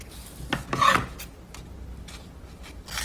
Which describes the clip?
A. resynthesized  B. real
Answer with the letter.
B